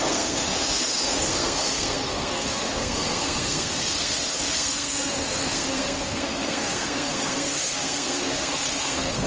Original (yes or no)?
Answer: no